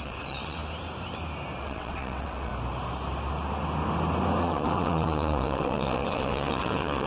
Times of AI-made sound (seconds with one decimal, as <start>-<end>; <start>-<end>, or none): 0.0-0.6; 1.6-2.5; 4.4-7.1